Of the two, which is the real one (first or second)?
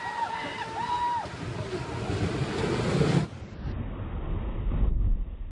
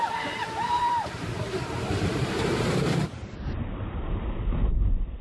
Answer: first